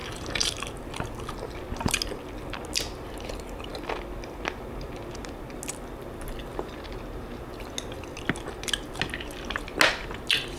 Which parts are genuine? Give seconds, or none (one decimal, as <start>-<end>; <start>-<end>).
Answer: 0.0-10.6